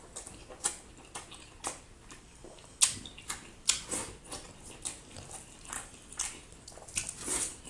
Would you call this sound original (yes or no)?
yes